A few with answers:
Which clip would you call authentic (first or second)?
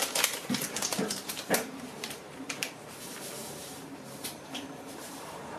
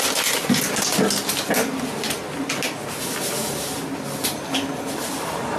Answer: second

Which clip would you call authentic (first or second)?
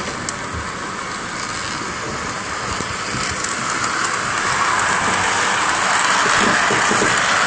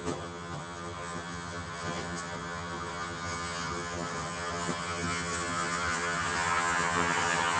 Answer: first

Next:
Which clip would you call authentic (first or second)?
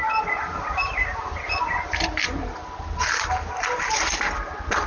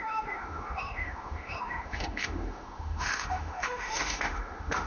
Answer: first